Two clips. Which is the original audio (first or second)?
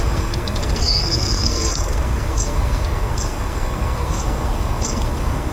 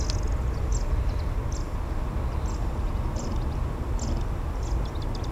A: second